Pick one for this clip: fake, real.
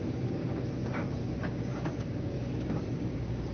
fake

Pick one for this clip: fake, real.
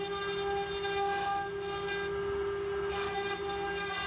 real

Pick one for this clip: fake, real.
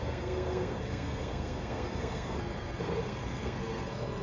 fake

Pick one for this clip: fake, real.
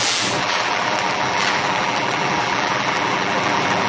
fake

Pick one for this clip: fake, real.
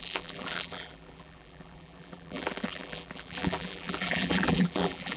fake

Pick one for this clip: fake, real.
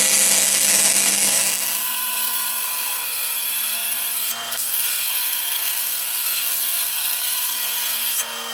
fake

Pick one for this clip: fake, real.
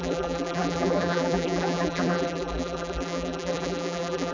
fake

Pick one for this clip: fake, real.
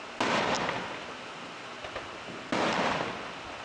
real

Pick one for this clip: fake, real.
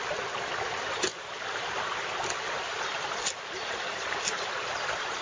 real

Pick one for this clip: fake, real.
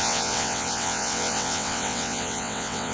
fake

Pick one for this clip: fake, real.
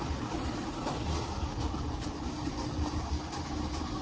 real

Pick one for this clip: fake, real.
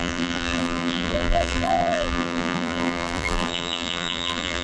fake